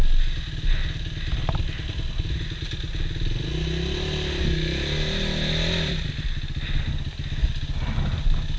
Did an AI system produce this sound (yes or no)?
no